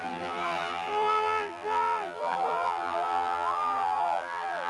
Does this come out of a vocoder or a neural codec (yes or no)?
yes